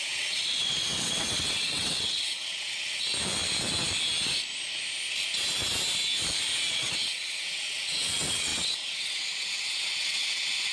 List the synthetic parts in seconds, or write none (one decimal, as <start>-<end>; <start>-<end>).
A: 0.0-3.1; 6.7-10.7